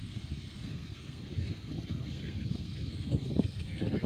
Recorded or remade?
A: remade